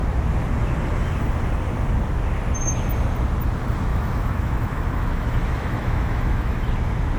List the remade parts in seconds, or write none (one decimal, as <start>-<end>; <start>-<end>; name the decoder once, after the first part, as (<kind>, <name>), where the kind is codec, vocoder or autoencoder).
3.9-6.7 (autoencoder, DAC-VAE)